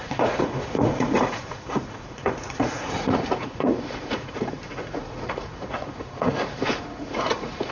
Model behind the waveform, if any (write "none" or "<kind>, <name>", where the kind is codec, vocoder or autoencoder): vocoder, Vocos